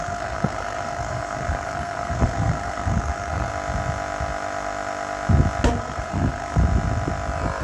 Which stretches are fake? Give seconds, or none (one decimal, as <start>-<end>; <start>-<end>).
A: 0.0-3.5; 5.8-6.6